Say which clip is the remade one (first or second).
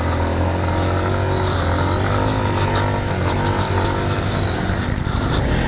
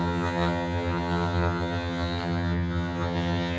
second